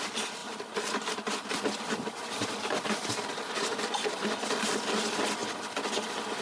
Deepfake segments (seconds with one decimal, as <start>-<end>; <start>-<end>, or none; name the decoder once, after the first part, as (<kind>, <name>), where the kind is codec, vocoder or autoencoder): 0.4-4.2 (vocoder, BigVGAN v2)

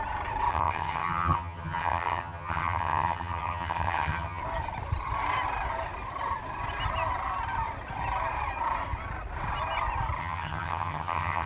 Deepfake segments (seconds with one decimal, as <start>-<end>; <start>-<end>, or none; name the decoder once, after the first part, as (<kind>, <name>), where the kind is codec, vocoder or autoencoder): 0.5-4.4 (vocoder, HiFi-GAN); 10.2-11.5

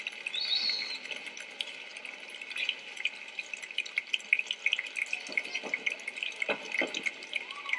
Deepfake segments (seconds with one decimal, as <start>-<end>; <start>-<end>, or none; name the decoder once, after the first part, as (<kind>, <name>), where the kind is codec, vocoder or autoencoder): none

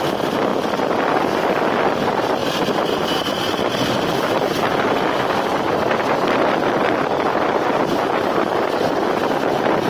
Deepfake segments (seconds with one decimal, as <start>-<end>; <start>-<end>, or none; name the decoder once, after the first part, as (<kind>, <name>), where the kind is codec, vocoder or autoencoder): 2.4-4.6 (vocoder, BigVGAN v2)

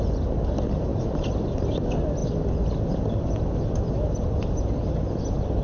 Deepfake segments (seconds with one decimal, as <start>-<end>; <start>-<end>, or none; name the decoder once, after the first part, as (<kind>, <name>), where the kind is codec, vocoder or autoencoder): 0.9-1.5 (vocoder, BigVGAN v2)